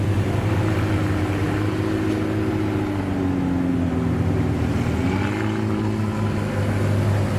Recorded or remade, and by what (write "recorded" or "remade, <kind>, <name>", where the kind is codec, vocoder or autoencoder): recorded